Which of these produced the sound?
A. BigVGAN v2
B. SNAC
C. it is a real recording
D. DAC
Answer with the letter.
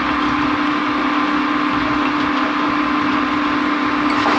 C